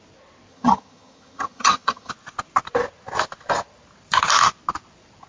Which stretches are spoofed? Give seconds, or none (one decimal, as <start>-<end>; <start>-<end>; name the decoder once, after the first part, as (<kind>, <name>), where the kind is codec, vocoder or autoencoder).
0.5-2.1 (vocoder, HiFi-GAN)